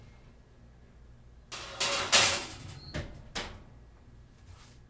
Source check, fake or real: real